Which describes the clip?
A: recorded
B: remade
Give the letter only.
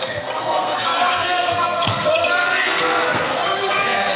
B